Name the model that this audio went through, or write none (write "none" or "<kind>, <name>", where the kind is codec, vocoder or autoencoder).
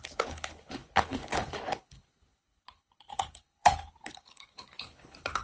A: codec, HILCodec